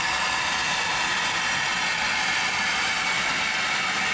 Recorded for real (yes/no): yes